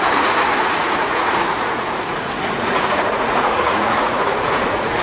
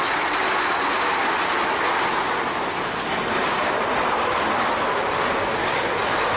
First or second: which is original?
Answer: second